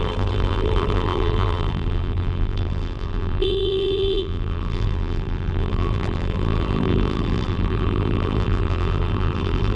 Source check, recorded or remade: remade